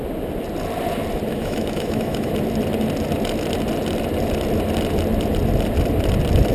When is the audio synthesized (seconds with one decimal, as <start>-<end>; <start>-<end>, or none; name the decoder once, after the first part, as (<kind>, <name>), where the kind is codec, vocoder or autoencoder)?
1.3-2.3 (autoencoder, DAC-VAE)